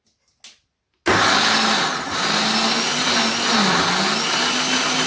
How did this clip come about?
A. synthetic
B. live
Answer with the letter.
B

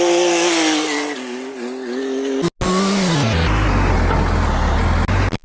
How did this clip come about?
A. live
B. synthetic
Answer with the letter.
A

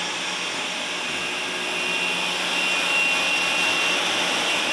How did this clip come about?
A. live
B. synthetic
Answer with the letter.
A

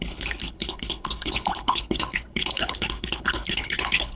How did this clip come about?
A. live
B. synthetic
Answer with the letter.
B